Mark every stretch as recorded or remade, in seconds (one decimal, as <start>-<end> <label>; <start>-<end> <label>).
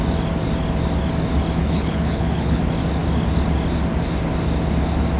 0.0-1.6 recorded; 1.6-2.6 remade; 2.6-5.2 recorded